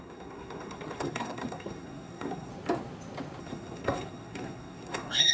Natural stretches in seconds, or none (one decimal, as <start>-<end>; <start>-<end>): 2.5-3.4